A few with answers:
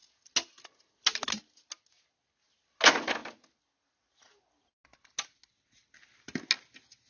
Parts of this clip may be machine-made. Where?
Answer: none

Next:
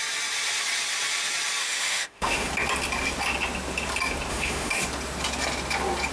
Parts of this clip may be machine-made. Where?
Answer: 1.6-2.5 (autoencoder, DAC-VAE); 4.3-4.8

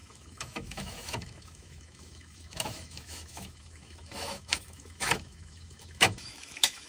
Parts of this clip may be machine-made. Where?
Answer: 0.0-6.9 (autoencoder, DAC-VAE)

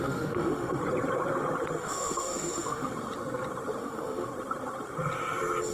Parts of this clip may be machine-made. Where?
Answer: 0.0-0.8 (autoencoder, DAC-VAE); 1.8-2.9; 3.8-4.3

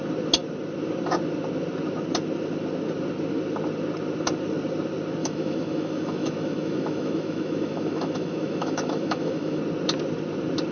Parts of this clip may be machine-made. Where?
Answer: 5.2-9.6 (autoencoder, DAC-VAE)